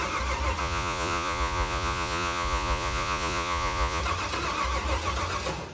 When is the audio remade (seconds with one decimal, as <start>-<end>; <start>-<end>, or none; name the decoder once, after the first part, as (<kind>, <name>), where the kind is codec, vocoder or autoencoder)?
0.6-4.0 (vocoder, Vocos)